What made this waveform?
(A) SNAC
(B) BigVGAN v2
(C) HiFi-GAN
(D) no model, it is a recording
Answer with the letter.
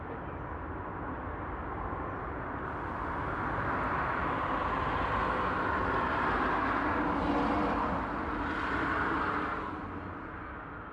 D